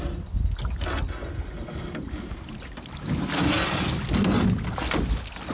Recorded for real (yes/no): yes